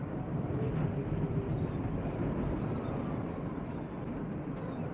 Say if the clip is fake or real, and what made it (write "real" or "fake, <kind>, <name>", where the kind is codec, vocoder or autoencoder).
real